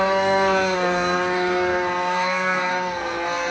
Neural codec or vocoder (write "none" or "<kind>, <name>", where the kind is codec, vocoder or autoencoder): codec, SNAC